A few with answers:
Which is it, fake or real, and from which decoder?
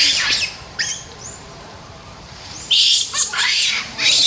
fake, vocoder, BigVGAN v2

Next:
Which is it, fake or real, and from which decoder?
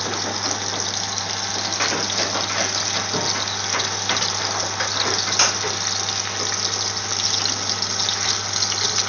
real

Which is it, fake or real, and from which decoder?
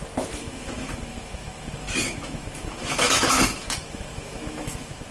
fake, autoencoder, DAC-VAE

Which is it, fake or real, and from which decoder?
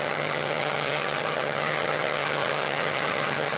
fake, vocoder, HiFi-GAN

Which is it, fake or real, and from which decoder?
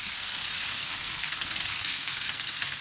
fake, codec, SNAC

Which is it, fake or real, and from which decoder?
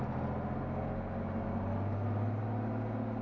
real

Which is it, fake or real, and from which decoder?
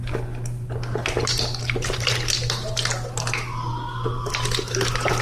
real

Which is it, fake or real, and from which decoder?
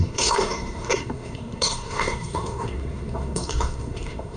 fake, codec, SNAC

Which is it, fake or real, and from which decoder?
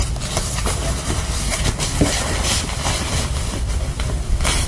real